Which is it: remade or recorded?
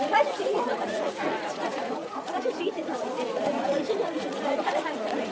remade